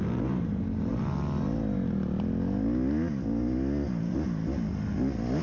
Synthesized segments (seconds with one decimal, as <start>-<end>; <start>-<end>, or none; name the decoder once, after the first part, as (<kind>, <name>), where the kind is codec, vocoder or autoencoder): none